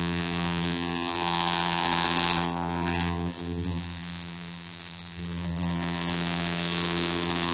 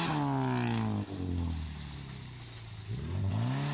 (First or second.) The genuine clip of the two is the second